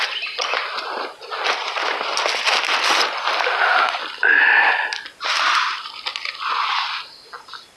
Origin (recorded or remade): recorded